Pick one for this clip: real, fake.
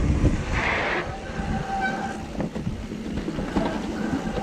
real